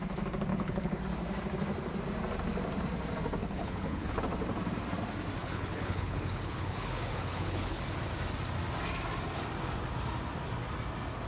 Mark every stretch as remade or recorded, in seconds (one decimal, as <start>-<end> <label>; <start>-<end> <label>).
0.0-0.5 recorded; 0.5-1.0 remade; 1.0-3.4 recorded; 3.4-4.2 remade; 4.2-5.4 recorded; 5.4-7.8 remade; 7.8-11.3 recorded